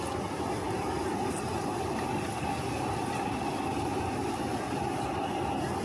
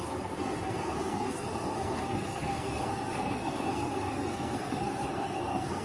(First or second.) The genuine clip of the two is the first